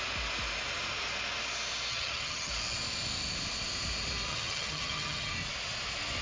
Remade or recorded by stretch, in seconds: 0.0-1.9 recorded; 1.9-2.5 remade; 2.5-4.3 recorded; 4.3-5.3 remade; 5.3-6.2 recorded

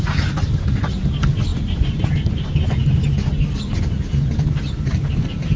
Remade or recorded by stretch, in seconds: 0.0-5.6 recorded